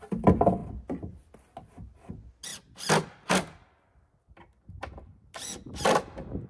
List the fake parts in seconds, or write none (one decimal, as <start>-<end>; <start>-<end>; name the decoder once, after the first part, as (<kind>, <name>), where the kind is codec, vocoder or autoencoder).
none